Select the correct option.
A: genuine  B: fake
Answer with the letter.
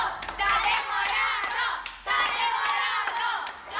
A